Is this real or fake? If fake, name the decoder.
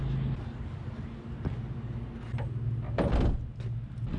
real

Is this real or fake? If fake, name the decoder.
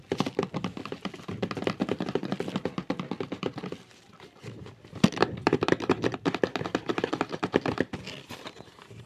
real